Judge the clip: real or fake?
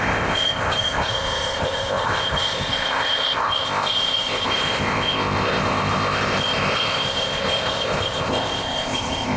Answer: fake